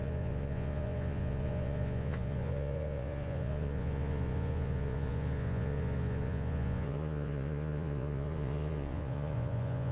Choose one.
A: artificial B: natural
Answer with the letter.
A